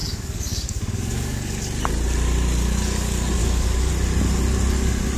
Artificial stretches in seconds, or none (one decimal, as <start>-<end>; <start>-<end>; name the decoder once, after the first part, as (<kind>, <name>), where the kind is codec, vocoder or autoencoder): 0.0-1.6 (codec, DAC); 3.4-3.9